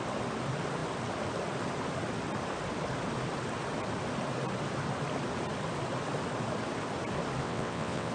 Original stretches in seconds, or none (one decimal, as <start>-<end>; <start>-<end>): 0.0-7.4